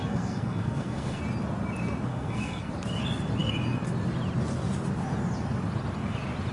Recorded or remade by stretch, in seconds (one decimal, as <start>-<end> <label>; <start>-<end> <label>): 0.0-1.2 remade; 1.2-2.1 recorded; 2.1-2.7 remade; 2.7-6.5 recorded